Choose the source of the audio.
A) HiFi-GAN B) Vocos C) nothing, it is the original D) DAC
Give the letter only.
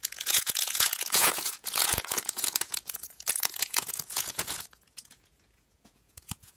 B